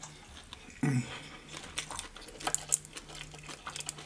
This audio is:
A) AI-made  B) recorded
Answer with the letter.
B